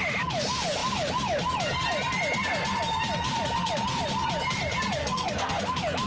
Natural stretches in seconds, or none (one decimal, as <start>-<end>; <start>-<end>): 0.0-5.0; 5.6-6.1